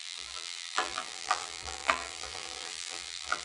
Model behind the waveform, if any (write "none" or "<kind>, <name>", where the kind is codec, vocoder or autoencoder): vocoder, BigVGAN v2